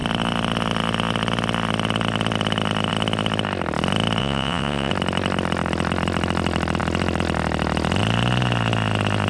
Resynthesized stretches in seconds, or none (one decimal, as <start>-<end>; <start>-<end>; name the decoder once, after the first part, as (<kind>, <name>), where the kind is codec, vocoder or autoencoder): 4.2-4.9 (vocoder, WaveNeXt)